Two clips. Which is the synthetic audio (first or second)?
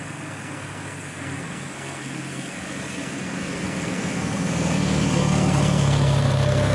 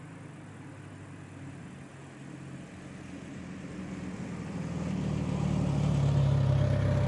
first